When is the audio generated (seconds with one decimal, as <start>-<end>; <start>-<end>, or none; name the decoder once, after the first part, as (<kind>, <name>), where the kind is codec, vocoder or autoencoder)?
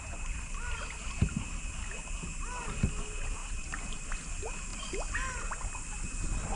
3.4-4.3 (vocoder, BigVGAN v2)